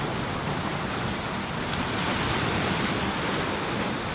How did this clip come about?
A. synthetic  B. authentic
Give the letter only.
B